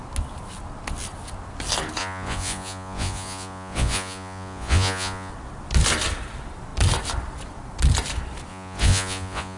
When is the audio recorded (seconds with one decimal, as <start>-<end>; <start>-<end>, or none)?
0.0-2.0; 5.3-8.5